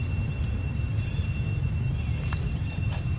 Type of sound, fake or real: real